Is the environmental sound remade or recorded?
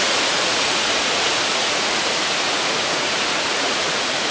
remade